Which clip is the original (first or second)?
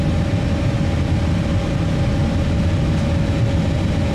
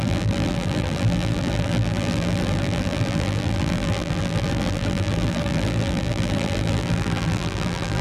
first